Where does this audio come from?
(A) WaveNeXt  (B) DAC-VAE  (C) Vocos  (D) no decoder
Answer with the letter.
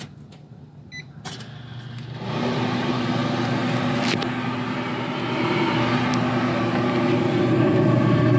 D